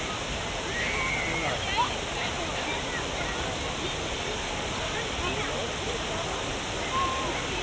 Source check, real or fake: real